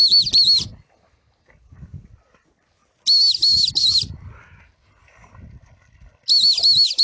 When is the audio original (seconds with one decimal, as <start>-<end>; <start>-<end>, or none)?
0.0-7.0